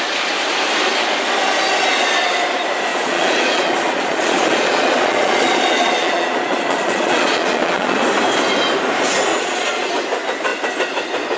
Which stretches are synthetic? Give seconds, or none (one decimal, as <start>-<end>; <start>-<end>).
2.9-8.0; 9.3-9.9